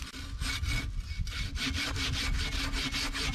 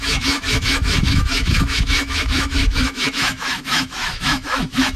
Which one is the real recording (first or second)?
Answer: first